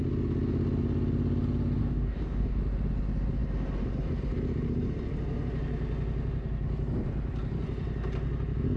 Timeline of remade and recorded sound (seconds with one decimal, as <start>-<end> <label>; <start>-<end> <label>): 0.0-1.8 recorded; 1.8-2.6 remade; 2.6-8.8 recorded